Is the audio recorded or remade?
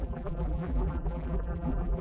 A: remade